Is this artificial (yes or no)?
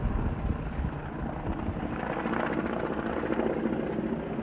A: no